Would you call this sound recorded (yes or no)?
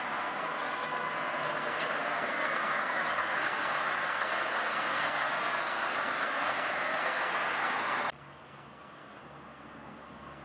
no